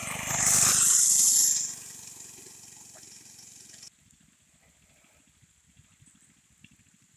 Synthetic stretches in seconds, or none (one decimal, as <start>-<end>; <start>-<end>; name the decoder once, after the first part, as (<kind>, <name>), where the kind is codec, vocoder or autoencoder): none